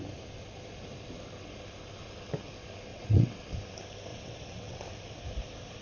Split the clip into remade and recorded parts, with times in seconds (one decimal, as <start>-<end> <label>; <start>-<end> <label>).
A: 0.0-2.9 recorded; 2.9-3.4 remade; 3.4-4.1 recorded; 4.1-4.8 remade; 4.8-5.8 recorded